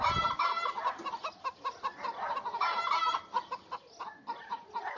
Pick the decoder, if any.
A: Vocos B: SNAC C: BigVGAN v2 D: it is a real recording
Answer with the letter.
D